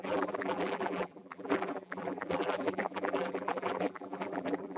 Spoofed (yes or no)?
yes